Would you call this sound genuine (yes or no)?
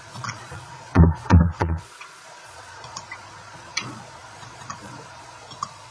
no